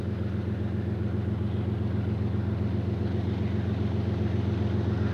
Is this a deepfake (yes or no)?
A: no